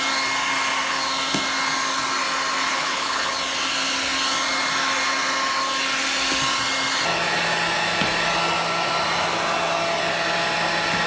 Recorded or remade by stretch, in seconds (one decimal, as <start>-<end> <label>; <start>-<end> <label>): 0.0-2.7 recorded; 2.7-3.3 remade; 3.3-11.1 recorded